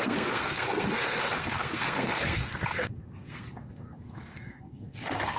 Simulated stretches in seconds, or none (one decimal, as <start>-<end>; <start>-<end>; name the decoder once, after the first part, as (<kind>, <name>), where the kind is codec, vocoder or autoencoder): 0.0-5.4 (codec, SNAC)